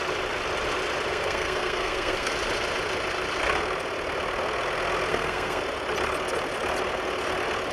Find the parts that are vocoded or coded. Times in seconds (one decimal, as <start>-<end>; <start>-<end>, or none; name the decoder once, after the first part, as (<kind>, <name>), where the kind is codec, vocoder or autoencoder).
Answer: 1.1-2.3 (codec, SNAC); 5.1-5.6